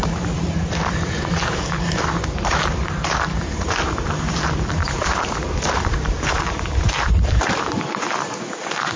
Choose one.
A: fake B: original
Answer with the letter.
A